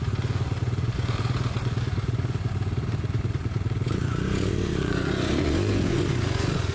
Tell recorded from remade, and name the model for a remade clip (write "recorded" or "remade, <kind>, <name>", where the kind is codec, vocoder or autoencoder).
remade, vocoder, Vocos